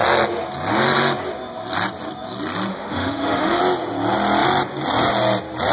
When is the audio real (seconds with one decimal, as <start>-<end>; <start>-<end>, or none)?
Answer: 0.0-2.7; 3.6-5.7

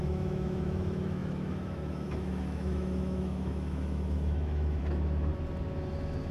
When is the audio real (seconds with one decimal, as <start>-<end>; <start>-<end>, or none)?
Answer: 5.3-6.3

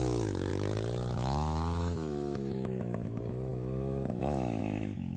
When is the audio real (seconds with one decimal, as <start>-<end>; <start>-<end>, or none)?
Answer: 0.5-1.1

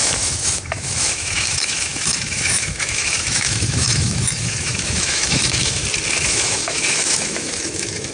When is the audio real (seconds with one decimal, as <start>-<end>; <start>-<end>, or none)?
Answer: 5.8-6.3

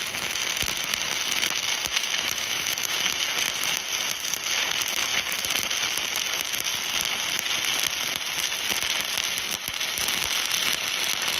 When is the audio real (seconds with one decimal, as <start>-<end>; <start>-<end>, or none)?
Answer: 0.0-1.9; 3.2-11.4